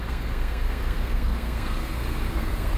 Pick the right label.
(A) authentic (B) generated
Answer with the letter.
B